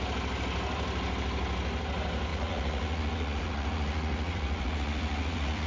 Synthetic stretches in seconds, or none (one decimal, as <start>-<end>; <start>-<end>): 2.3-5.7